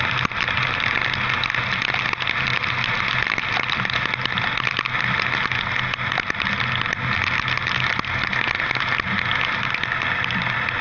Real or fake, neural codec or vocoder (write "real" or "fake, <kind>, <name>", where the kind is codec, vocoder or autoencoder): real